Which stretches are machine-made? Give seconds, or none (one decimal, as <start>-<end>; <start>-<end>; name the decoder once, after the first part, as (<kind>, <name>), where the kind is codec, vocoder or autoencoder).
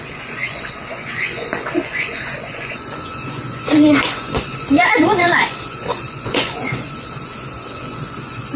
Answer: 0.0-8.6 (vocoder, Vocos)